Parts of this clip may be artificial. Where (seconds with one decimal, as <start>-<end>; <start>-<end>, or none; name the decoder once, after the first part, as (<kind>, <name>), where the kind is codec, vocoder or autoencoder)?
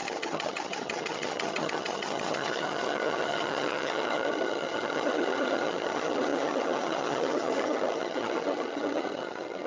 0.0-9.7 (vocoder, HiFi-GAN)